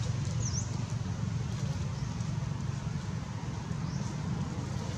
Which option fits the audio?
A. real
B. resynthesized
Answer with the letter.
A